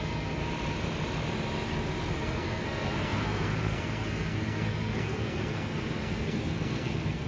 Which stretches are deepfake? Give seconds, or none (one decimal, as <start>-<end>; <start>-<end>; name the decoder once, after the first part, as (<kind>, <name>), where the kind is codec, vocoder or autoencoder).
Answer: 0.0-0.4 (codec, SNAC); 2.1-7.3